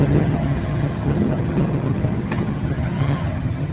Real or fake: fake